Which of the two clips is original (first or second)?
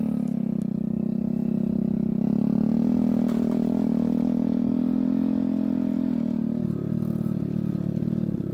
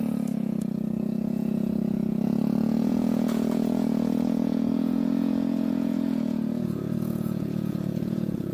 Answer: first